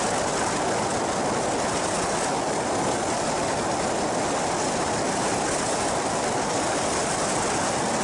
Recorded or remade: recorded